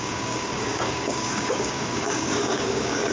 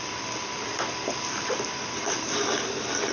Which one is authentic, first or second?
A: second